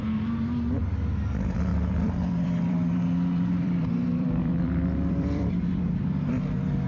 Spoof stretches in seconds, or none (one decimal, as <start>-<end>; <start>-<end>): 1.7-5.8